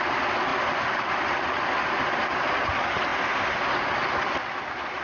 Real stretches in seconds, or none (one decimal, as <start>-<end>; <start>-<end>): 0.0-5.0